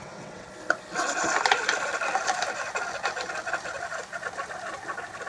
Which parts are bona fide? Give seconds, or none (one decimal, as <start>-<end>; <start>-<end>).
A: 0.5-5.3